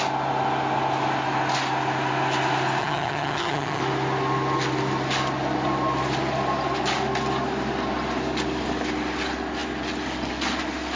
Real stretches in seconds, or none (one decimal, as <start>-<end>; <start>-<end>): 0.0-2.8; 3.8-11.0